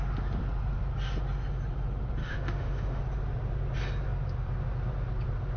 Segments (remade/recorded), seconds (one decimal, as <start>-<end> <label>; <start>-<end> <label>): 0.0-2.2 recorded; 2.2-3.0 remade; 3.0-5.6 recorded